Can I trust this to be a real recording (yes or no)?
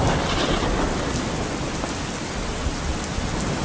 yes